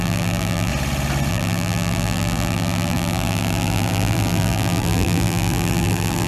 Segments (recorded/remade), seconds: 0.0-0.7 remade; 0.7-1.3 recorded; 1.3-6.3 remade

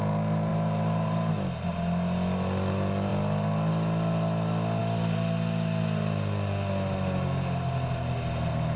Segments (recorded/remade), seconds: 0.0-0.5 recorded; 0.5-1.3 remade; 1.3-8.8 recorded

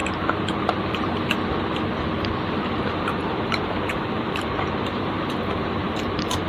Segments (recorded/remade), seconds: 0.0-2.5 recorded; 2.5-6.5 remade

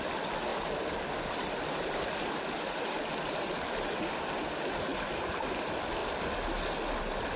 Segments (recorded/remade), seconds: 0.0-7.4 recorded

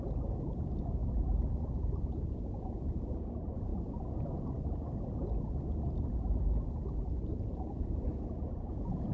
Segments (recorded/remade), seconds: 0.0-3.7 remade; 3.7-6.3 recorded; 6.3-9.1 remade

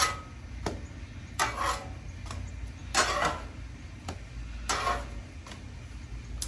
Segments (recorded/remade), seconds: 0.0-6.5 recorded